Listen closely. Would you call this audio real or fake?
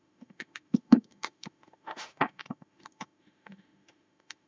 fake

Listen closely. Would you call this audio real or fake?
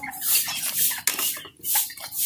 real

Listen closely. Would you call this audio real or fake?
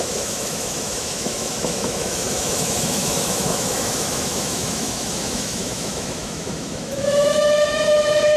fake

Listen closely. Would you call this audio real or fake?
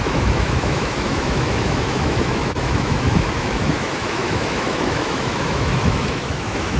fake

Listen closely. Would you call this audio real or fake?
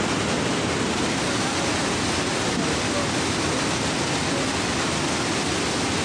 real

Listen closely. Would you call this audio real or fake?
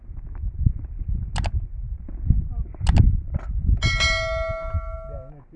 real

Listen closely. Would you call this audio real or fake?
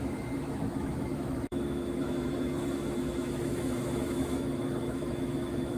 fake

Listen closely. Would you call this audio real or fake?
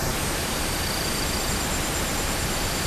real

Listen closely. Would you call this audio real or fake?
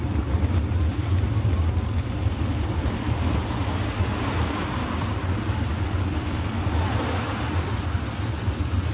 real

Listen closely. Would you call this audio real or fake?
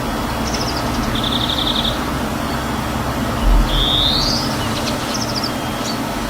real